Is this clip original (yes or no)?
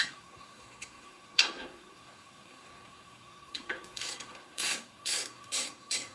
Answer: no